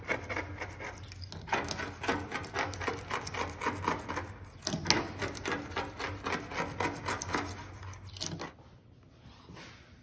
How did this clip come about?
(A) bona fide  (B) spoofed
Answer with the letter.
A